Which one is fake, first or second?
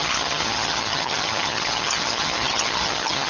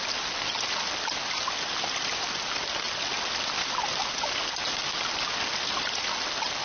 first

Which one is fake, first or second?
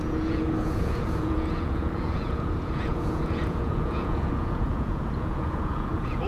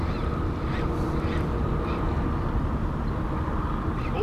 first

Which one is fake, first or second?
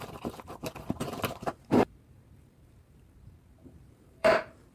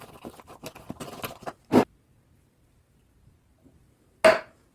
first